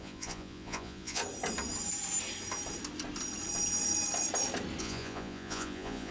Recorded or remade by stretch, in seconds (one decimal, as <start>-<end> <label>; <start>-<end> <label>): 0.0-1.2 remade; 1.2-4.8 recorded; 4.8-6.1 remade